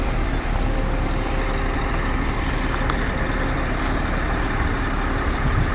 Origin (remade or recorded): remade